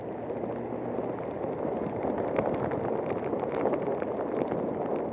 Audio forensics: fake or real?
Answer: real